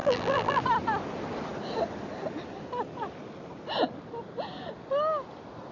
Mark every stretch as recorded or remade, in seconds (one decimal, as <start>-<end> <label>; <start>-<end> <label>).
0.0-0.6 remade; 0.6-5.7 recorded